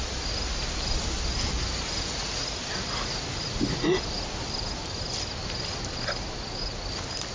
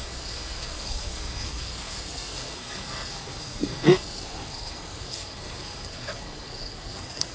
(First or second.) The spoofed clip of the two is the second